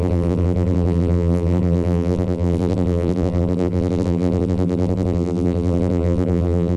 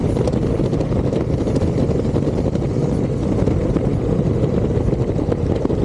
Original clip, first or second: second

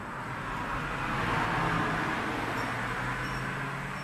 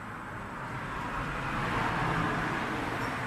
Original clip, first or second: first